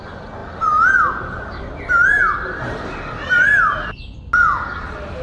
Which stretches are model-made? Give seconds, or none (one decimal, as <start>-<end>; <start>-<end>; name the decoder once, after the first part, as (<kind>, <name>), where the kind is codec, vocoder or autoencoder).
none